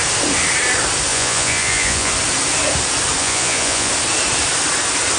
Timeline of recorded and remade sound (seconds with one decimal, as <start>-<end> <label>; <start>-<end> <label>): 0.0-1.1 recorded; 1.1-2.1 remade; 2.1-3.2 recorded; 3.2-3.9 remade; 3.9-5.2 recorded